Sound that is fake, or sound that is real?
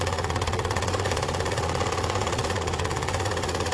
fake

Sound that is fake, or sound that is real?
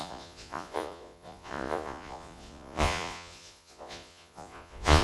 fake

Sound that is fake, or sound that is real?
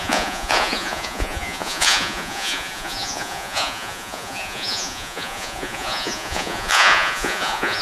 fake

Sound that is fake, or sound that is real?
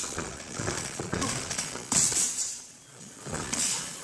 fake